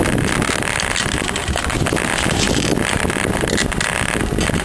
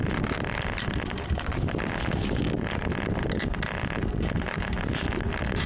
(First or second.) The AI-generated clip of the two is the second